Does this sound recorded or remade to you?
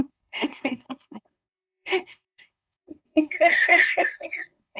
remade